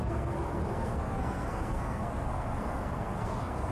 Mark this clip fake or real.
fake